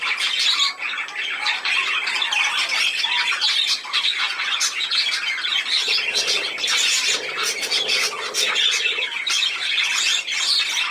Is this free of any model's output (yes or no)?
yes